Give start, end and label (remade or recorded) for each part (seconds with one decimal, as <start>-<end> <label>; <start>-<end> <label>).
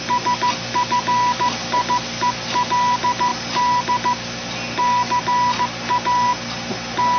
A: 0.0-7.2 recorded